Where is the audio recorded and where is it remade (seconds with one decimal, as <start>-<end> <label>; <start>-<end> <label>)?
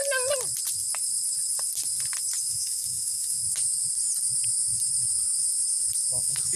0.0-2.5 recorded; 2.5-3.4 remade; 3.4-6.1 recorded; 6.1-6.6 remade